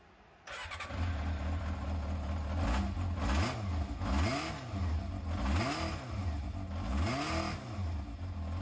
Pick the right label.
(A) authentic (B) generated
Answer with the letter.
A